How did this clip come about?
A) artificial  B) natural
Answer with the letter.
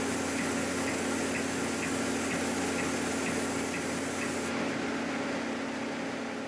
B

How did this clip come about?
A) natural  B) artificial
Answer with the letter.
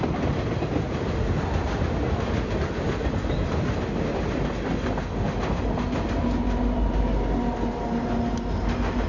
A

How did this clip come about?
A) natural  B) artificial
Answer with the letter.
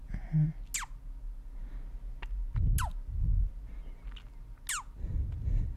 A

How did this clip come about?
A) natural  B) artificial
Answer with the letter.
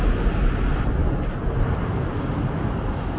A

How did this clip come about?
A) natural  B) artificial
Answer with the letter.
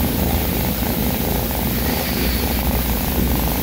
B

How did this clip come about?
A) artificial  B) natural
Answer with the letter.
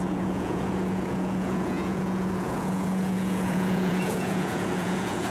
A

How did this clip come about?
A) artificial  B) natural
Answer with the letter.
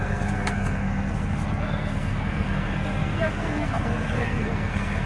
A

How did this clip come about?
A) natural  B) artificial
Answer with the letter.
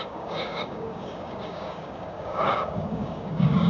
B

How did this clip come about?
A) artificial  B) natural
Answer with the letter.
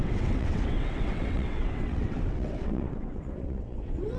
A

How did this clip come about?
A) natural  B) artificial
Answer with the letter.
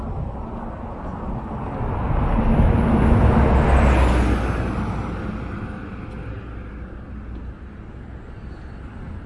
A